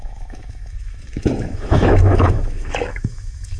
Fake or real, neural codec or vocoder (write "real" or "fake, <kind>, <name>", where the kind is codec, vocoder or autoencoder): fake, autoencoder, DAC-VAE